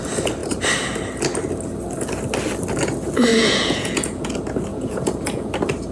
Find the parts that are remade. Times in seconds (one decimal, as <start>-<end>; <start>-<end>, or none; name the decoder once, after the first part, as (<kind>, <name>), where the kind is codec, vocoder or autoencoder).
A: 3.3-4.3 (vocoder, Vocos); 4.7-5.5